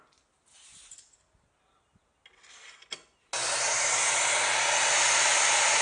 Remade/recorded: recorded